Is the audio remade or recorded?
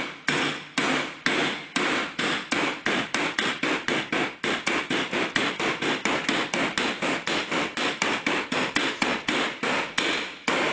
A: recorded